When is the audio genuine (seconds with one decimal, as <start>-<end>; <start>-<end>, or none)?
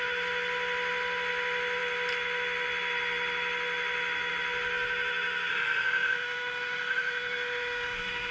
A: 0.0-5.5